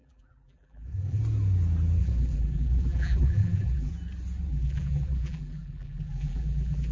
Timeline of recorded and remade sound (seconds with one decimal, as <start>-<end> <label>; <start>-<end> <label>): 0.0-1.2 remade; 1.2-2.0 recorded; 2.0-3.9 remade; 3.9-4.5 recorded; 4.5-6.9 remade